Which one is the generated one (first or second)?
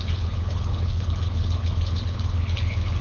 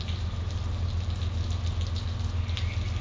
first